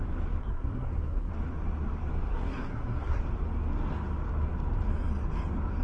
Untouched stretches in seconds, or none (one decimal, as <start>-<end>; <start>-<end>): 0.0-0.4; 1.3-2.3; 3.2-5.8